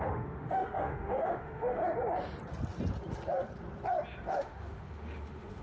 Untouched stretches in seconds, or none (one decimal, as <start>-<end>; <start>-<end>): 1.8-4.3